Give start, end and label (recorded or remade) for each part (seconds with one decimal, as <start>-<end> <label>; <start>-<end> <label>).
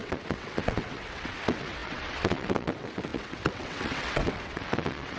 0.0-5.2 remade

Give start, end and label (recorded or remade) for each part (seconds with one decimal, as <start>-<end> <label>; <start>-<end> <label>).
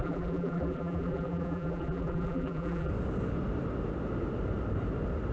0.0-2.9 remade; 2.9-5.3 recorded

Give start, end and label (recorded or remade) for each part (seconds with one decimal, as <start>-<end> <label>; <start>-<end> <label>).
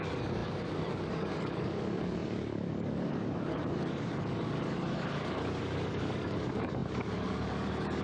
0.0-8.0 remade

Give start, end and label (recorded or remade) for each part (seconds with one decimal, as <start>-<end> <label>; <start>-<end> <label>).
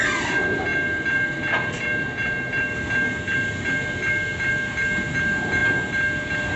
0.0-6.6 recorded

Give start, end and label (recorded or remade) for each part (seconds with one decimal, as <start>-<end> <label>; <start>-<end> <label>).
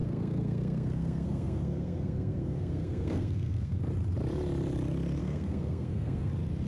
0.0-3.8 remade; 3.8-5.2 recorded; 5.2-6.3 remade; 6.3-6.7 recorded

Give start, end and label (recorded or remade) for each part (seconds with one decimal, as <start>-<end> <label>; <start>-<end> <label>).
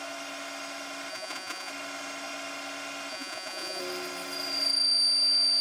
0.0-1.1 recorded; 1.1-1.7 remade; 1.7-3.1 recorded; 3.1-3.8 remade; 3.8-5.6 recorded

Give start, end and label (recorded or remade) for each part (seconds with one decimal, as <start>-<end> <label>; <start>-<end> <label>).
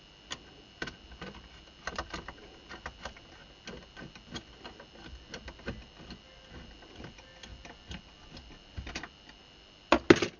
0.0-10.4 recorded